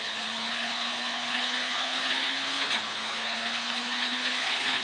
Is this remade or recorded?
remade